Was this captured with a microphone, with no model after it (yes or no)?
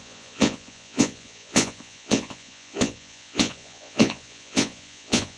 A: no